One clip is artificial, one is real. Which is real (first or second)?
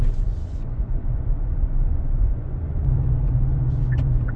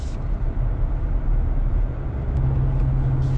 second